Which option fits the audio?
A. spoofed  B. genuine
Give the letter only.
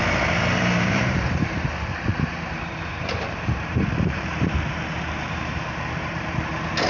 A